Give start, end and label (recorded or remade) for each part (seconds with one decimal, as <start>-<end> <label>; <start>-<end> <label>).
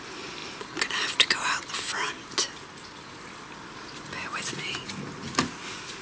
0.0-6.0 recorded